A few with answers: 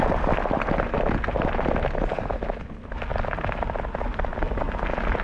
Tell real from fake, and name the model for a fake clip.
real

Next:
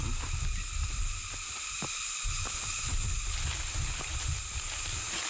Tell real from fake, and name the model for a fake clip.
real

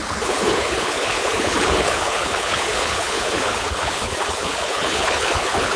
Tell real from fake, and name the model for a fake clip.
fake, codec, HILCodec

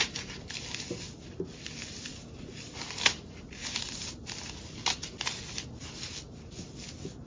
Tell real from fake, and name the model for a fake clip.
real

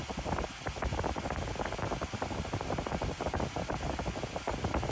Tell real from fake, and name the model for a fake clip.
real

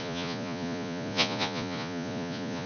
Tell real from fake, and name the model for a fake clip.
fake, vocoder, Vocos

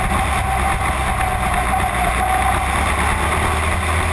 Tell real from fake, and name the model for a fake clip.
real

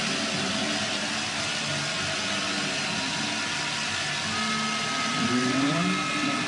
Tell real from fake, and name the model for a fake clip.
real